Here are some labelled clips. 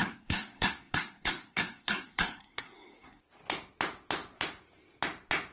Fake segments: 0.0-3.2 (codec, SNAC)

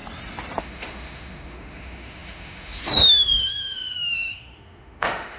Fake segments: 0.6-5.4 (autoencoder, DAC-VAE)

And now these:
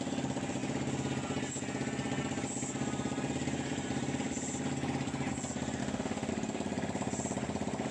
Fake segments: 5.8-6.3 (autoencoder, DAC-VAE)

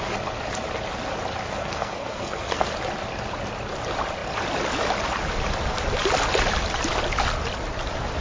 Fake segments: 1.6-2.7 (codec, SNAC)

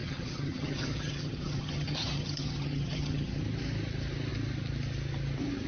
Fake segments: 0.0-3.4 (vocoder, HiFi-GAN)

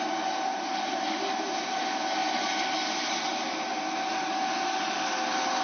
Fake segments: none